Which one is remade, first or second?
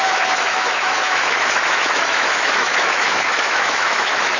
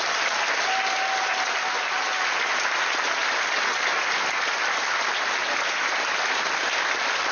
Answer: first